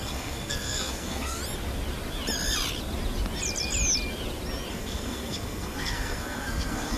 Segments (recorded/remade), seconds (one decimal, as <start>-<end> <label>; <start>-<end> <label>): 0.0-1.4 remade; 1.4-4.7 recorded; 4.7-7.0 remade